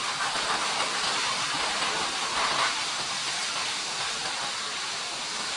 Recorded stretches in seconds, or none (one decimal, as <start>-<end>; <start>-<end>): 0.0-5.6